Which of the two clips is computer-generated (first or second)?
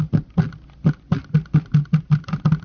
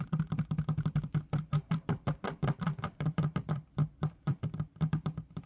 second